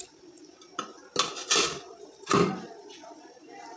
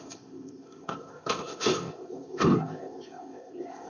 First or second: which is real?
first